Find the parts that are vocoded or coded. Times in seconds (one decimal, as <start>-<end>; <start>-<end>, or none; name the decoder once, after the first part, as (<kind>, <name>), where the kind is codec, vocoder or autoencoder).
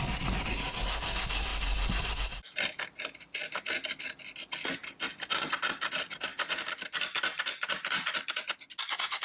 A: 1.5-2.4 (vocoder, BigVGAN v2); 6.3-8.3